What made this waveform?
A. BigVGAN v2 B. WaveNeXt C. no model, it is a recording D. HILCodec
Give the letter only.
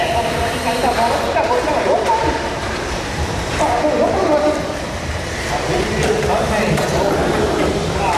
A